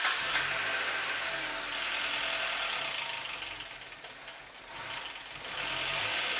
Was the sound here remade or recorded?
recorded